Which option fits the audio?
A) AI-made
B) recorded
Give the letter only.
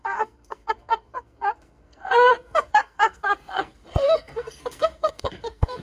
A